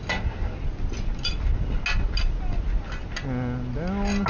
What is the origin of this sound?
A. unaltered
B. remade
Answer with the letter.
A